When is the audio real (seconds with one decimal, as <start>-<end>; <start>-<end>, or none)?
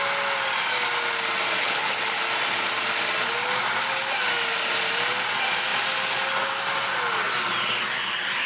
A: 0.0-1.6; 2.2-8.5